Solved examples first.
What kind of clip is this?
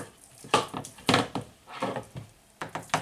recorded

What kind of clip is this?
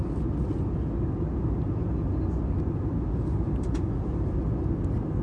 recorded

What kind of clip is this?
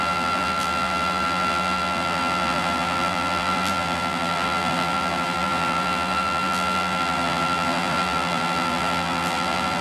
remade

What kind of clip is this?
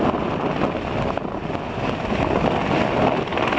recorded